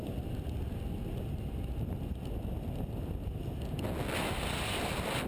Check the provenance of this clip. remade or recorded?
recorded